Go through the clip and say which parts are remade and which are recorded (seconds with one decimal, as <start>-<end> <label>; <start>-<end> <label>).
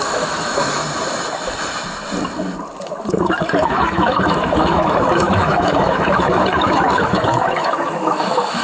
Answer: 0.0-0.8 remade; 0.8-2.8 recorded; 2.8-8.6 remade